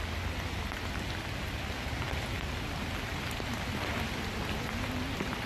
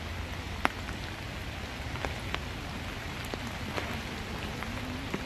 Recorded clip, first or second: second